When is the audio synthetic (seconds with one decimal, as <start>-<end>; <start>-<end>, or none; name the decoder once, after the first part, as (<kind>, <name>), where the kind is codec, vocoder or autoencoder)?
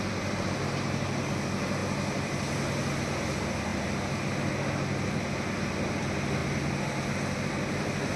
none